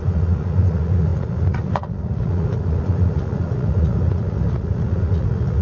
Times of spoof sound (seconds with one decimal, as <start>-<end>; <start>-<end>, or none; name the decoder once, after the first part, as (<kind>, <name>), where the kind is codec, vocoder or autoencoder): 0.0-5.6 (vocoder, Vocos)